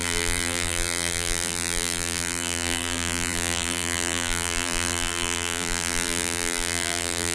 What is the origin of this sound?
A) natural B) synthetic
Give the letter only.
B